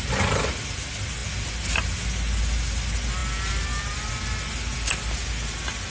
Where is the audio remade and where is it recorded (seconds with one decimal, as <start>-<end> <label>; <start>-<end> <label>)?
0.0-5.9 recorded